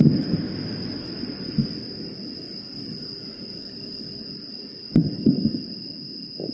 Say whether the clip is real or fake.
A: real